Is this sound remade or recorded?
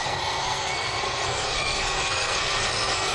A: remade